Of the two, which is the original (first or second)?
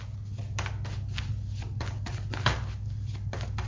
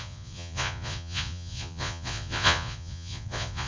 first